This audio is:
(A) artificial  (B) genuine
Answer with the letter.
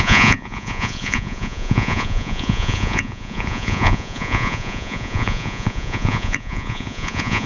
A